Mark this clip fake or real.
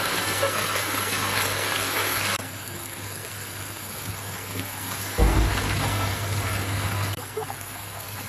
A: fake